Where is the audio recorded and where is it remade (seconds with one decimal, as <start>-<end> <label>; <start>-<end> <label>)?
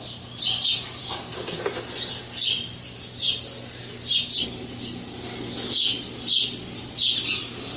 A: 0.0-1.0 recorded; 1.0-1.6 remade; 1.6-7.8 recorded